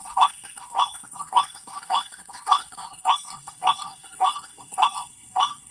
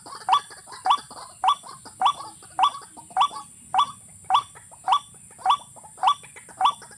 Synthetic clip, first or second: first